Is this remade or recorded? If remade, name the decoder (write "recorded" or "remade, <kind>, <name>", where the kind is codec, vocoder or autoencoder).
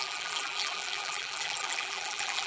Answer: remade, vocoder, BigVGAN v2